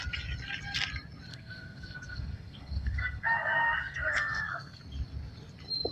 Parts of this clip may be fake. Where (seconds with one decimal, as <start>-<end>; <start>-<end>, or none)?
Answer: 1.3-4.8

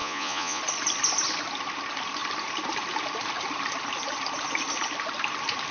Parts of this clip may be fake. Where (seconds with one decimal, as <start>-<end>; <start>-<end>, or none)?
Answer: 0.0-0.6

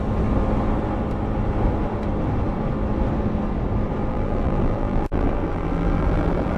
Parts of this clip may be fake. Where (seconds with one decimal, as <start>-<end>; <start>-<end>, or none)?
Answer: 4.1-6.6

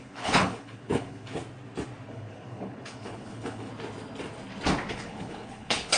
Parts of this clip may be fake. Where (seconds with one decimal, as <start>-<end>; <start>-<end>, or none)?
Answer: 0.0-1.4; 2.1-3.7; 4.9-6.0